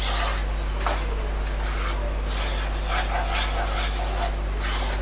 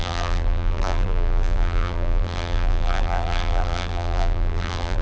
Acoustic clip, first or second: first